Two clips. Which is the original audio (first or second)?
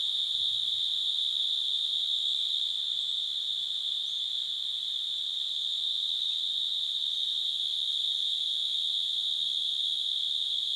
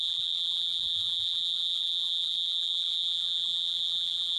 first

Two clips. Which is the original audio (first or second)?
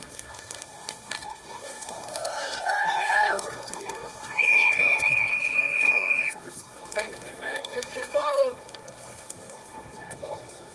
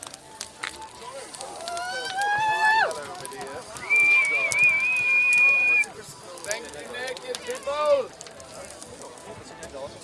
second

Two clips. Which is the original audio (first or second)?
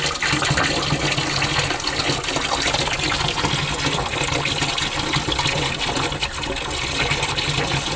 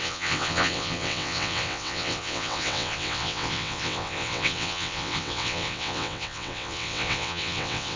first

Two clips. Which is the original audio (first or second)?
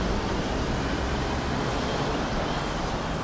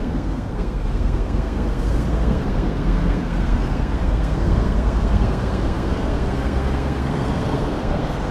first